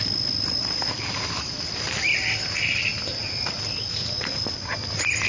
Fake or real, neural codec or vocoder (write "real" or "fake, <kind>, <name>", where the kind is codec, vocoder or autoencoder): real